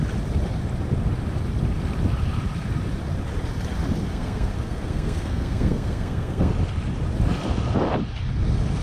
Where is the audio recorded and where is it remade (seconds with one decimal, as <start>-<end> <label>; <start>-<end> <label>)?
0.0-4.1 recorded; 4.1-6.5 remade; 6.5-8.8 recorded